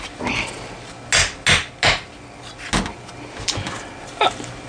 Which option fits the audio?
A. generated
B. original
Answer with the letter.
B